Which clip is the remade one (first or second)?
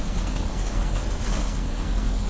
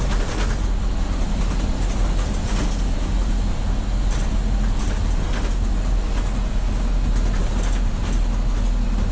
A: first